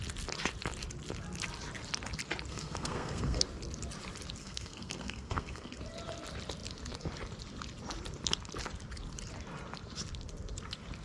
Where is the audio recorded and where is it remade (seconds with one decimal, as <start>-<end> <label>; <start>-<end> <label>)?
0.0-2.5 recorded; 2.5-3.4 remade; 3.4-4.4 recorded; 4.4-5.8 remade; 5.8-11.0 recorded